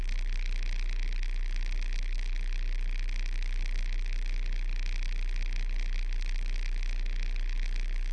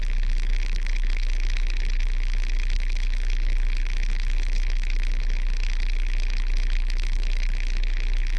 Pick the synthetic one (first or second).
second